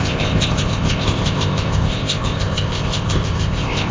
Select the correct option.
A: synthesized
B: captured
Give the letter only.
A